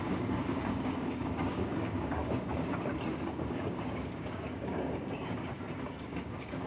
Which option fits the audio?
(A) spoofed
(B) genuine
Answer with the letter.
A